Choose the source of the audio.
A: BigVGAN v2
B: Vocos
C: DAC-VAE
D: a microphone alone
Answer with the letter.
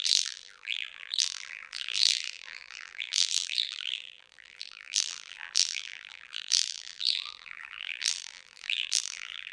A